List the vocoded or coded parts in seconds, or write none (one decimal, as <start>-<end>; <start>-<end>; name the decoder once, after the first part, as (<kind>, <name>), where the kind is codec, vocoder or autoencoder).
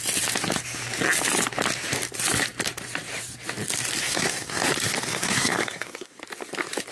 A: 4.0-4.6 (codec, SNAC); 5.1-6.2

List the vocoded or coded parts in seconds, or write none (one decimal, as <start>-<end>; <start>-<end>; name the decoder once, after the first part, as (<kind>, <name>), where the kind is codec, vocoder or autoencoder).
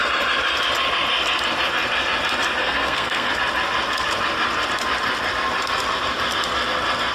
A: 2.6-3.3 (codec, SNAC)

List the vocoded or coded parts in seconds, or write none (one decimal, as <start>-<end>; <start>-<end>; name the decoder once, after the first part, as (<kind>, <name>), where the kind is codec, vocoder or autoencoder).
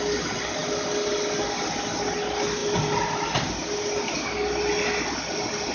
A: none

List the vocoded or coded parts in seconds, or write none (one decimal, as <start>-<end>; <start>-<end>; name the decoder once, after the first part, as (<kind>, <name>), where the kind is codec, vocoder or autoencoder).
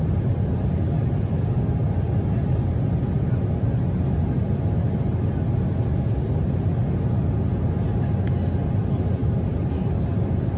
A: 9.2-9.9 (vocoder, BigVGAN v2)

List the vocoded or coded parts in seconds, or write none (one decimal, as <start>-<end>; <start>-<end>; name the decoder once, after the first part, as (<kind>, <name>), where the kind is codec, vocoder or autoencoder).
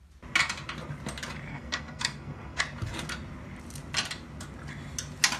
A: 1.5-2.6 (codec, SNAC)